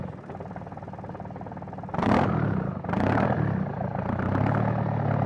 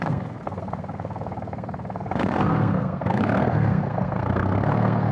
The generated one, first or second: second